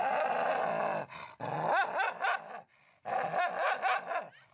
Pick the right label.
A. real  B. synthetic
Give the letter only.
A